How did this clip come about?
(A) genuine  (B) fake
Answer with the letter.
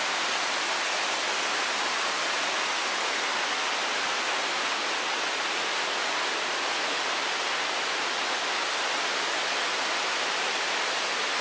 A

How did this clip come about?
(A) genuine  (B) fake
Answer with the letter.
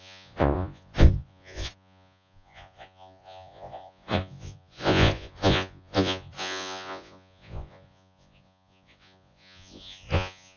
B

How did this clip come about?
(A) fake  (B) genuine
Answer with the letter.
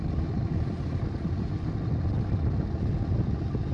B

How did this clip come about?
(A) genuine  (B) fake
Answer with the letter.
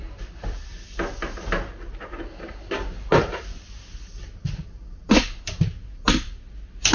A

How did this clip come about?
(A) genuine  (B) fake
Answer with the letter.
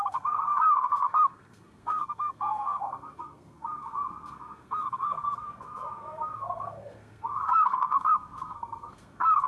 B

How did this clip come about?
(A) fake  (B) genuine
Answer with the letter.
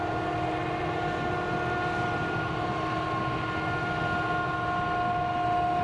B